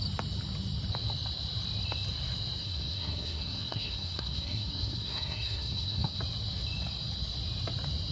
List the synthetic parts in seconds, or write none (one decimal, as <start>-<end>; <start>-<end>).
2.6-6.2